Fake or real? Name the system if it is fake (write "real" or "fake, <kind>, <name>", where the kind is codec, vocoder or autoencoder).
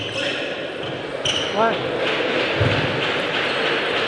real